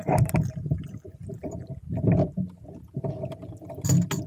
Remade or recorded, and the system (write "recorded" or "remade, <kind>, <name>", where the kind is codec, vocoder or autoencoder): recorded